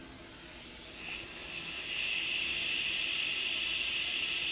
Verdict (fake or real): real